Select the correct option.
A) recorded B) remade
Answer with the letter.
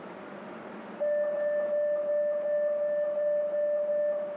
A